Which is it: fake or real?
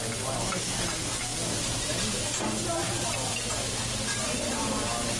real